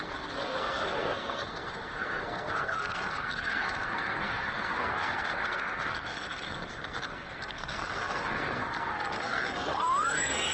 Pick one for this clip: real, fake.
fake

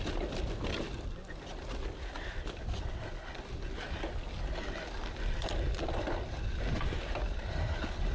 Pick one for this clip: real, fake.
real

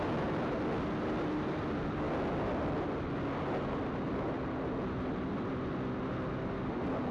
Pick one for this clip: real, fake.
real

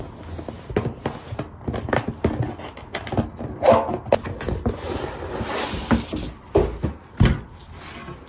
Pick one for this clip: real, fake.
real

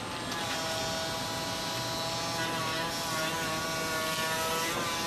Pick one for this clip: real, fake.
real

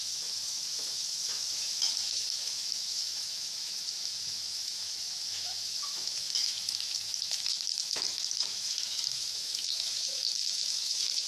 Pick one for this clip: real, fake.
fake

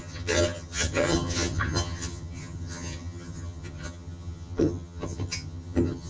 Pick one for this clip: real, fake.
fake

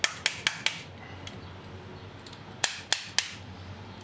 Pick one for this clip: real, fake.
real